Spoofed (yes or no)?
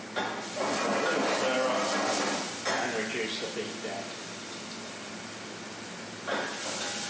no